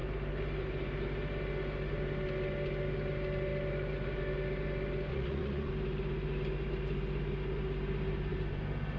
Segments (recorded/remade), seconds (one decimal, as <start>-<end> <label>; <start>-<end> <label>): 0.0-5.1 recorded; 5.1-5.7 remade; 5.7-9.0 recorded